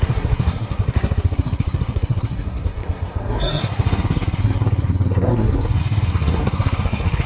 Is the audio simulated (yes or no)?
yes